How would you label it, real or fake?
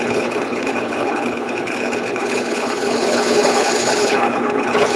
fake